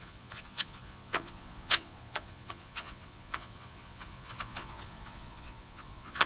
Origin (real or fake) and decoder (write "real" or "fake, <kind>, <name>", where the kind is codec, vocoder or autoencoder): fake, vocoder, Vocos